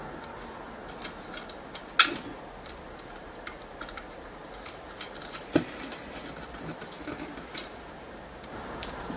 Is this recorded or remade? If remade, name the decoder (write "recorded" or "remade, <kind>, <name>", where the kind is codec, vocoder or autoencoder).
recorded